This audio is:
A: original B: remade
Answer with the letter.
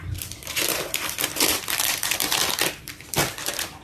B